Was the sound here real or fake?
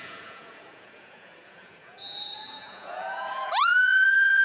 fake